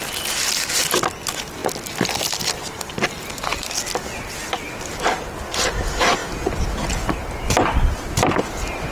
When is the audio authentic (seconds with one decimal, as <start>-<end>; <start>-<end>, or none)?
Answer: 0.0-8.9